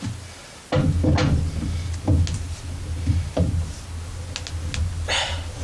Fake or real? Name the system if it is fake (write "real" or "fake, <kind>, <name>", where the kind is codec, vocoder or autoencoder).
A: real